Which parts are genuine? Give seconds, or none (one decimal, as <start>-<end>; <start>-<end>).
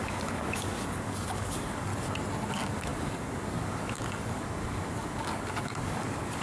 1.9-2.5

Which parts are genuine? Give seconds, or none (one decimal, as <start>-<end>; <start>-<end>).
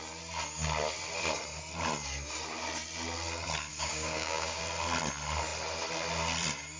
0.0-3.7; 4.6-6.8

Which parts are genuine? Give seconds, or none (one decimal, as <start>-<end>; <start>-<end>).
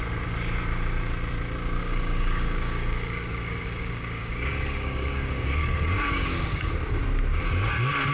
0.0-1.8; 6.7-8.1